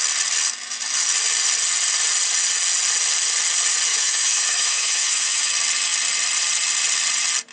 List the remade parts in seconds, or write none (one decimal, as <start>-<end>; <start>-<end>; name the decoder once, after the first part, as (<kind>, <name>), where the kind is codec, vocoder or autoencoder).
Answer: 3.9-5.5 (autoencoder, DAC-VAE)